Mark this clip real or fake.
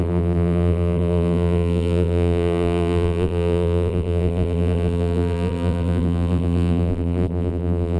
fake